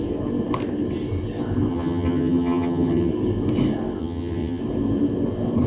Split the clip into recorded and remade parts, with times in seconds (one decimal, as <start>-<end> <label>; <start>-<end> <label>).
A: 0.0-1.7 recorded; 1.7-3.1 remade; 3.1-4.0 recorded; 4.0-4.6 remade; 4.6-5.7 recorded